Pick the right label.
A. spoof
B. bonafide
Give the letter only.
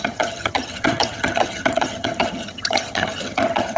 A